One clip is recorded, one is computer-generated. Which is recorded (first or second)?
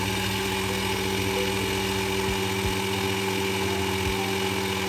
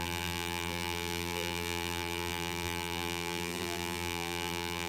first